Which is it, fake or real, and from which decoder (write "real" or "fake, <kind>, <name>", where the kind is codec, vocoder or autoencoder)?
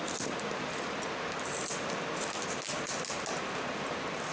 real